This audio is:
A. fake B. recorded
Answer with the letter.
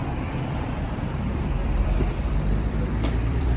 A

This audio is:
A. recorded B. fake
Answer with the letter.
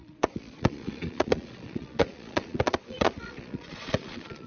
B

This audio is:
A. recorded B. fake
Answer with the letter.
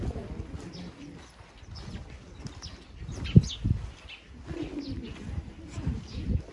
A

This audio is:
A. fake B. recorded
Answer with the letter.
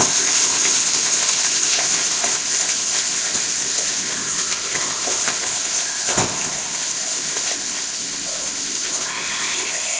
A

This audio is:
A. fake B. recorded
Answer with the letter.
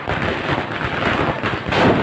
B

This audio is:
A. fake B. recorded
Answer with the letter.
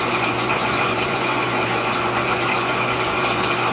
A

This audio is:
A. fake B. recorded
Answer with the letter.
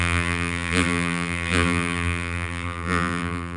A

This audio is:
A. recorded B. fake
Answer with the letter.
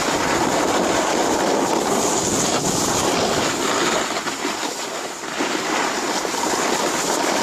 A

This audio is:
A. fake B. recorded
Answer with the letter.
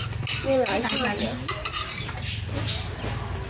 B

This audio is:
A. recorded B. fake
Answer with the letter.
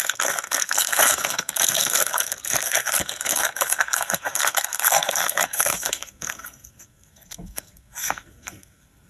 B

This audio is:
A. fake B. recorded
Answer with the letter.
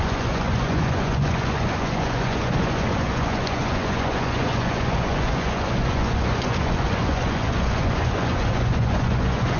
A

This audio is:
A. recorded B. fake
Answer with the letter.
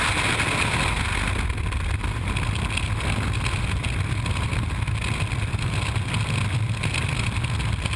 A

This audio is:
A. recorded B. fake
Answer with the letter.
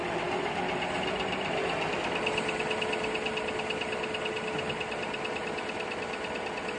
A